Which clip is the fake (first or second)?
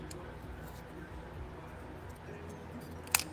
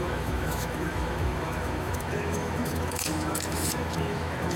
second